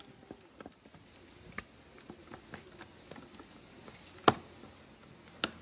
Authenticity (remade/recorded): recorded